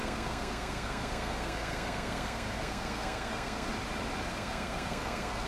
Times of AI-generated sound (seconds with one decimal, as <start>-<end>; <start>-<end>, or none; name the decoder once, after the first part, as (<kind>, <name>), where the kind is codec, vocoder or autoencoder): 0.0-3.7 (codec, SNAC); 4.3-5.5